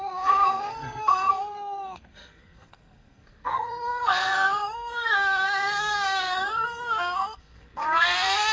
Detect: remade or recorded remade